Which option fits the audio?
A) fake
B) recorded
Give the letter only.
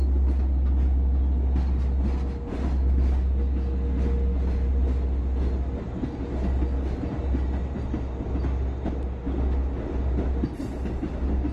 B